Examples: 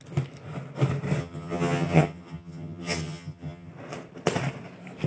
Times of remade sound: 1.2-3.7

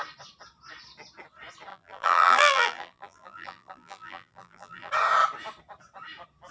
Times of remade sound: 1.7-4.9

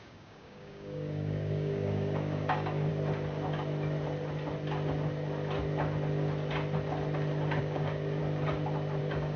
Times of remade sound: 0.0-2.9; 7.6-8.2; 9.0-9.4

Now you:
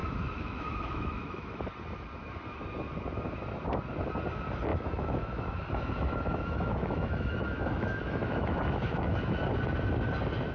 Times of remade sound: 0.0-1.6; 4.7-9.4